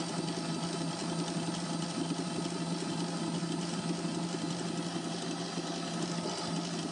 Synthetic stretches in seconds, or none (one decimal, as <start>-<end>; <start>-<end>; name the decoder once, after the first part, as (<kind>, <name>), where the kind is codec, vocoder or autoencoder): none